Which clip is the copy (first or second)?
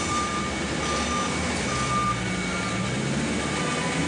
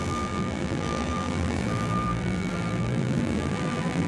second